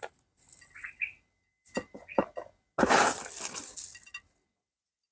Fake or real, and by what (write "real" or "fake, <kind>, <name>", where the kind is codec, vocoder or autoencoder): real